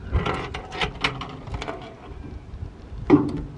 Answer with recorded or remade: recorded